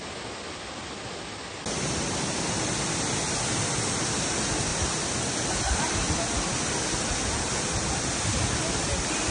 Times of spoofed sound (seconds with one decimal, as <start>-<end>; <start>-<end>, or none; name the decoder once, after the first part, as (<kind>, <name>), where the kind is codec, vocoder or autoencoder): 4.7-5.8 (vocoder, BigVGAN v2)